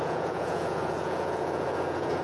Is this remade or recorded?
remade